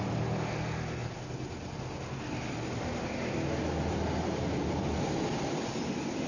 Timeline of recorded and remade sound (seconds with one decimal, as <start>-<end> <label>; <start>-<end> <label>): 0.0-6.3 recorded